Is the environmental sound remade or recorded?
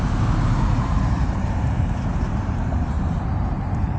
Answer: remade